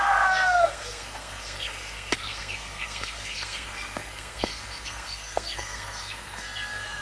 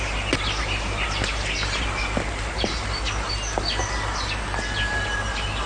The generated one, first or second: first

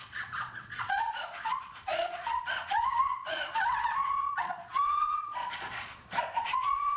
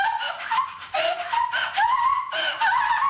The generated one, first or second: first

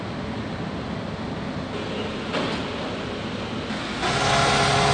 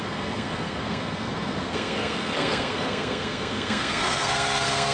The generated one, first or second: second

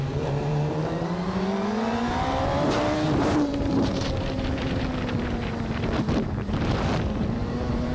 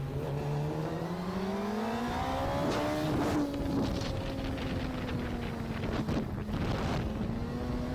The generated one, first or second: first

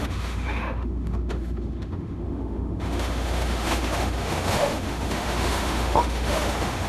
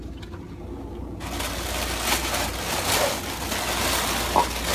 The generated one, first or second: first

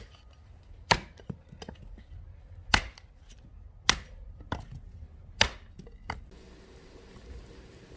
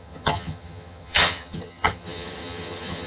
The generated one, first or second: second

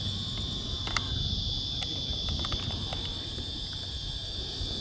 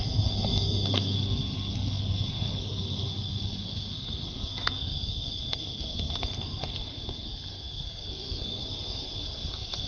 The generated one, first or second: second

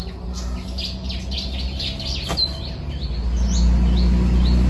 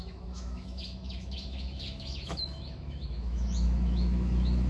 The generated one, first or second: second